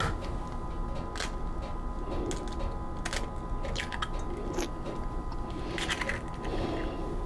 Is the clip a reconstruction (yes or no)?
no